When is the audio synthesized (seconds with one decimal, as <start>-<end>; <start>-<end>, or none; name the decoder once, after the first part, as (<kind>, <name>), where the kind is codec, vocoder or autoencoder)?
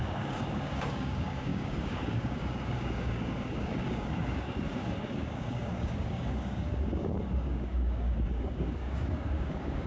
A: 0.0-9.9 (codec, DAC)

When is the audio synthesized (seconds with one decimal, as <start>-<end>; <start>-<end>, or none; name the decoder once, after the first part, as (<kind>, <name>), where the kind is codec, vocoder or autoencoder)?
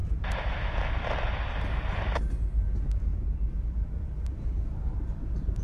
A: none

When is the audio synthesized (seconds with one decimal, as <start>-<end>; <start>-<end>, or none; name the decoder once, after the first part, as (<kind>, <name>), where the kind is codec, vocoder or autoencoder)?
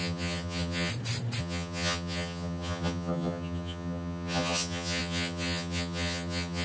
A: 0.0-0.9 (vocoder, HiFi-GAN); 1.4-6.6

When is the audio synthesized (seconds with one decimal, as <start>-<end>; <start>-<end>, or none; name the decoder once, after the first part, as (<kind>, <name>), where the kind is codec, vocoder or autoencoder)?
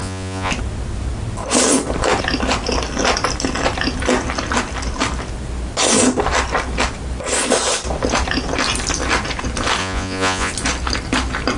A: 0.0-0.5 (vocoder, Vocos); 9.8-10.5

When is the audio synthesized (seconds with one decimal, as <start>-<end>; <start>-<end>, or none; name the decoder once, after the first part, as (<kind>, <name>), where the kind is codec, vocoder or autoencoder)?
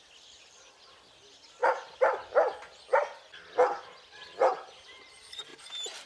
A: 0.0-1.6 (vocoder, BigVGAN v2); 4.9-6.1